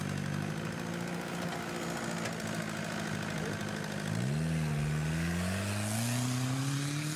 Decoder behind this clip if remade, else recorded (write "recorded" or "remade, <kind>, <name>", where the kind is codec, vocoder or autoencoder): recorded